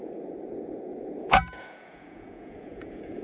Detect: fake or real fake